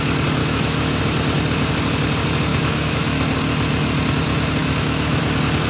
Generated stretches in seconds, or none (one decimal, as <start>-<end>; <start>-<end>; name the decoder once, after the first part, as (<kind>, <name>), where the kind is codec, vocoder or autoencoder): 0.4-1.0 (autoencoder, DAC-VAE); 2.5-3.2; 4.6-5.2

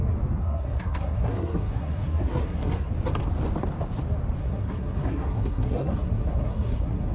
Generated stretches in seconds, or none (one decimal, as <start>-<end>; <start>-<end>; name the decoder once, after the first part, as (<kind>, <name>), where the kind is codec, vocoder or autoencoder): 0.4-2.9 (codec, SNAC); 4.4-7.1